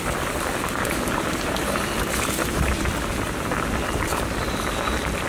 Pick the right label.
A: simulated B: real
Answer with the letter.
B